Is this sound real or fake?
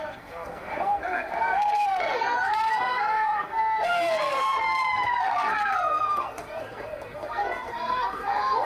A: fake